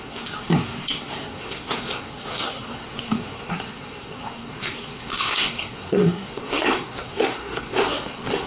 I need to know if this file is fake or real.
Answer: fake